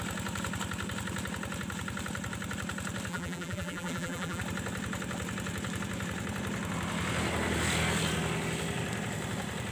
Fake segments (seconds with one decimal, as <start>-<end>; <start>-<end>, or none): 3.1-4.4